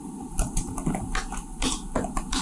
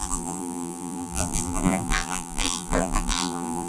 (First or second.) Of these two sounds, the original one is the first